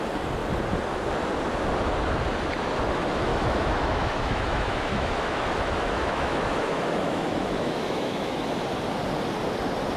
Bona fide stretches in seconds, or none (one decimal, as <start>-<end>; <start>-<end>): 0.0-3.3; 8.5-10.0